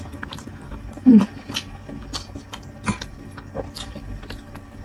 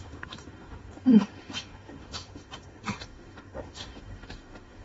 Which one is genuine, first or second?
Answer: first